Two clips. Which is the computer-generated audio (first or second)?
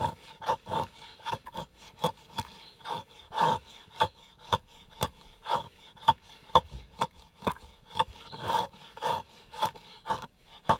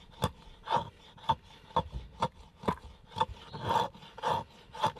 first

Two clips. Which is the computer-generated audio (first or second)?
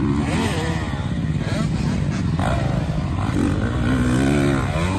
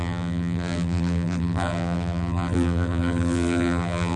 second